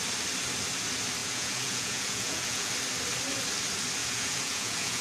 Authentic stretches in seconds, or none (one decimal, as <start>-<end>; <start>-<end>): 0.0-1.2; 2.7-4.0